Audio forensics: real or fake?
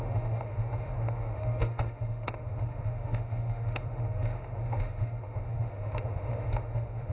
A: fake